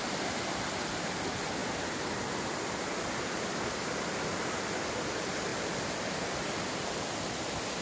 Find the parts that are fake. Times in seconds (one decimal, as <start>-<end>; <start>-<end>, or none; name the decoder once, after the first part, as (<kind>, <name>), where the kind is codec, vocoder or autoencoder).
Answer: none

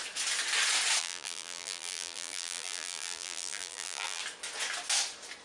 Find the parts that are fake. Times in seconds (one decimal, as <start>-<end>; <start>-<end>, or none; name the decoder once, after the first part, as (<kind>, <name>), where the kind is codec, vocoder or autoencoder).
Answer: 1.0-4.2 (vocoder, BigVGAN v2)

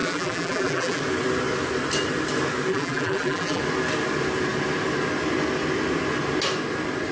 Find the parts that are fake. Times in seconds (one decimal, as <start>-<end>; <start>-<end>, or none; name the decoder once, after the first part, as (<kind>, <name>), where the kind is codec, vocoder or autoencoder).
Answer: 0.0-1.0 (vocoder, BigVGAN v2); 2.7-3.6

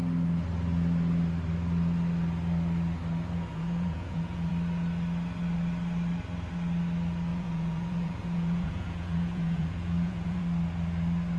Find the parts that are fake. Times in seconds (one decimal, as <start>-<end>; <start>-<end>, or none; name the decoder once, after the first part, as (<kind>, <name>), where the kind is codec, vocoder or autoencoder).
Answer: 3.5-4.5 (vocoder, Vocos); 7.3-10.4

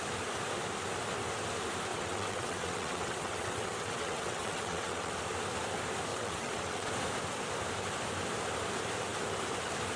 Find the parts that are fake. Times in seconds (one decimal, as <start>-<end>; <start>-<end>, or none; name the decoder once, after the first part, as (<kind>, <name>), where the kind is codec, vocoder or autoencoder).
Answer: 1.9-5.1 (vocoder, WaveNeXt); 6.1-6.9

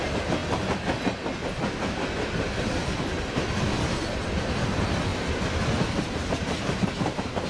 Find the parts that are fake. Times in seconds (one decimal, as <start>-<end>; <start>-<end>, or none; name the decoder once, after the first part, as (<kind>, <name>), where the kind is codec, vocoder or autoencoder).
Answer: none

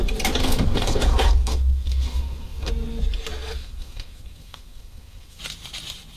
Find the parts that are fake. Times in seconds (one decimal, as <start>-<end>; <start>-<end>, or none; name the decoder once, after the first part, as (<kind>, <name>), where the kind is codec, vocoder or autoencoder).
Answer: 0.4-2.7 (codec, SNAC); 3.6-5.4

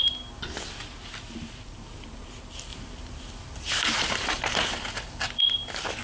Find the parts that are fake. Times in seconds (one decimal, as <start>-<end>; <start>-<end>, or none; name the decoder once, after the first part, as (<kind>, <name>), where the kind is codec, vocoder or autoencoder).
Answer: 2.7-5.4 (vocoder, BigVGAN v2)